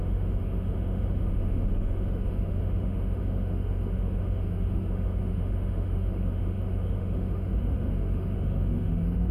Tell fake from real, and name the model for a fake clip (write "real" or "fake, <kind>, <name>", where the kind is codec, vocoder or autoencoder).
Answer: fake, autoencoder, DAC-VAE